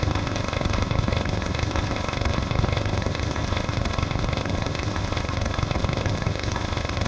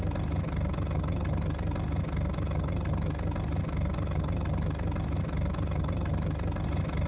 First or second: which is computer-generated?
first